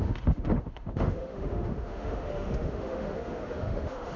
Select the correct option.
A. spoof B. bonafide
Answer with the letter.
A